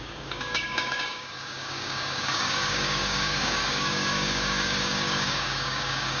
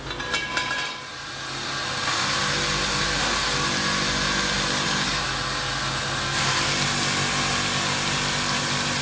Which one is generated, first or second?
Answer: first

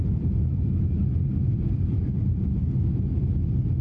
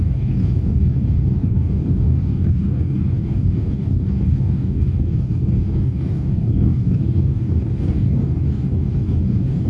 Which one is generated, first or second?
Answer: second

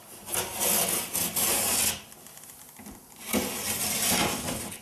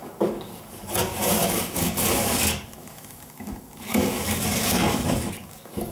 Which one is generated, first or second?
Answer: second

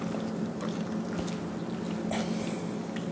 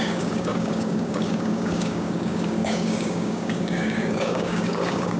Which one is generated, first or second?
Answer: second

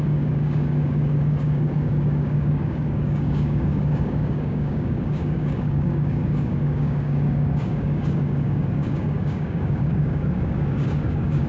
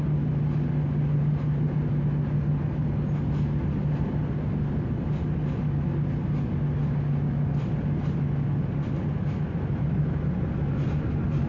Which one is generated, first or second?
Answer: first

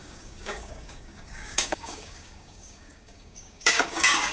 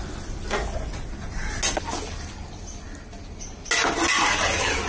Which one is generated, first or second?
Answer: first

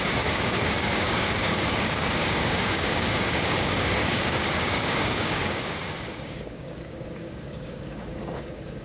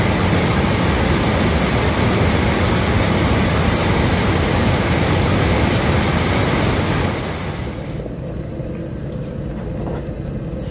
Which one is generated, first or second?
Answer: first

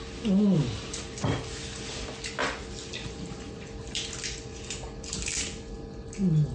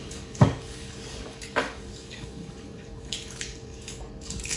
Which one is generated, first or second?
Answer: second